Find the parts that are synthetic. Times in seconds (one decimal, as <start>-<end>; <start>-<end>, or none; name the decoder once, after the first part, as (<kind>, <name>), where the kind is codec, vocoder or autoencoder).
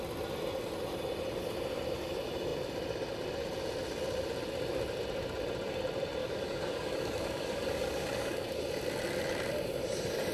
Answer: 6.2-8.6 (codec, DAC)